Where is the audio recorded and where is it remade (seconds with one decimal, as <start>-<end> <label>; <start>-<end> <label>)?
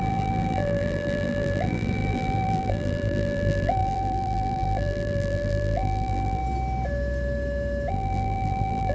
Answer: 0.0-6.4 remade; 6.4-7.9 recorded; 7.9-8.9 remade